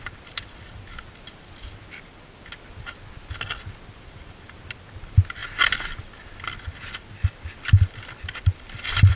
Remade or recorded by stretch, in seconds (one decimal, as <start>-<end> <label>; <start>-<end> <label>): 0.0-9.2 recorded